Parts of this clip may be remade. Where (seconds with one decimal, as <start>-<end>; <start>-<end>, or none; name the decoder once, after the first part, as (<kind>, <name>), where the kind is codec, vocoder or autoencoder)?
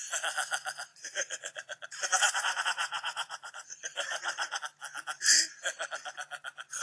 0.9-4.6 (vocoder, Vocos)